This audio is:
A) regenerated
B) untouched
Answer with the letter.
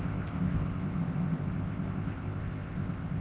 A